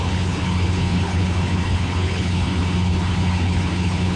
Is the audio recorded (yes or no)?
no